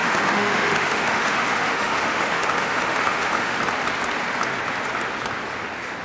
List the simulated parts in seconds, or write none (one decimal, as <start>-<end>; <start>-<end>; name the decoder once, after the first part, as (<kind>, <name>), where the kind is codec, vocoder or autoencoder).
0.0-3.6 (autoencoder, DAC-VAE)

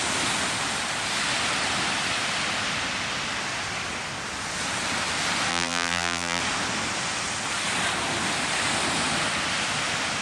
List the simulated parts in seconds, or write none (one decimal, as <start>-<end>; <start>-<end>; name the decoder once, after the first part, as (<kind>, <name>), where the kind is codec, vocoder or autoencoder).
5.5-6.4 (vocoder, BigVGAN v2)

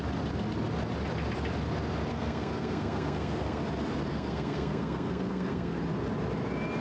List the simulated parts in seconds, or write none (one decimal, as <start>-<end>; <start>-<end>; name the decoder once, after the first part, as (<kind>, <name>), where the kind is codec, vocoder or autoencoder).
2.1-3.6 (codec, SNAC); 4.1-5.8

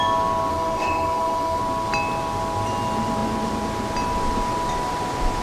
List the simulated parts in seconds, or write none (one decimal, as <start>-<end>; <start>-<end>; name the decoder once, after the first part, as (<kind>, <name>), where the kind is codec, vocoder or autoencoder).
0.5-1.6 (autoencoder, DAC-VAE)

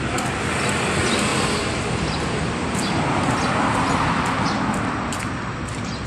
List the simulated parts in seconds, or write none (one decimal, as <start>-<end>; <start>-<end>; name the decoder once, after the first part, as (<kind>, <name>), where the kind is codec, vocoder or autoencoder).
1.3-3.5 (vocoder, BigVGAN v2)

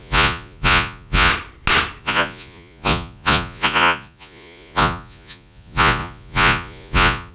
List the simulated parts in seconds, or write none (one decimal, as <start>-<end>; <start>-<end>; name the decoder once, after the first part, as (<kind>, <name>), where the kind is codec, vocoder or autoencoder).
0.0-1.3 (vocoder, Vocos); 2.0-7.3